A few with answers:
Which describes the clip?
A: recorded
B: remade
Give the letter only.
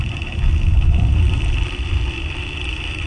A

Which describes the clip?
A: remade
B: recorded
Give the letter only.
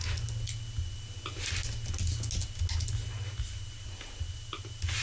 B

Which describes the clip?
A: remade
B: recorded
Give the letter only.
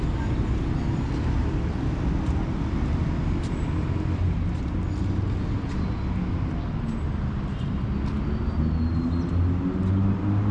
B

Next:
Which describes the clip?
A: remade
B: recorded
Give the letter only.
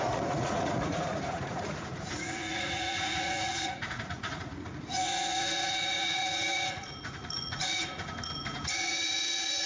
A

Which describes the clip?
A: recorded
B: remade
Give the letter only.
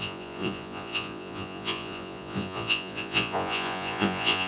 B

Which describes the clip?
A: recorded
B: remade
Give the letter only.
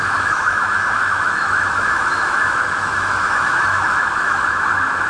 B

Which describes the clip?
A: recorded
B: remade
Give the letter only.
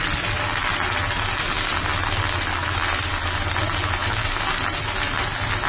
A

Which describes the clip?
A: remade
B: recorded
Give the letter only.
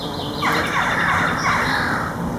B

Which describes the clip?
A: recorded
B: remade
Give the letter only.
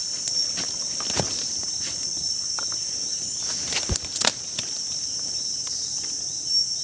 A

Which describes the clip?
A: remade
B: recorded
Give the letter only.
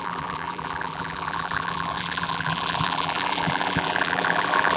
A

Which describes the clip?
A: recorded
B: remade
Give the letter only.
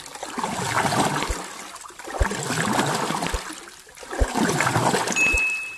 A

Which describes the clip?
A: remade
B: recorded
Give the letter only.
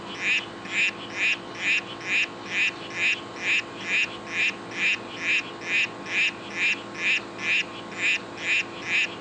B